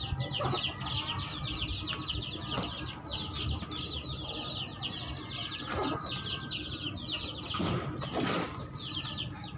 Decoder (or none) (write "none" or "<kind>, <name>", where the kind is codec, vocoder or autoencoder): none